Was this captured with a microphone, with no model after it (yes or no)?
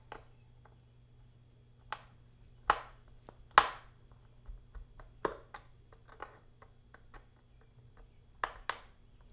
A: yes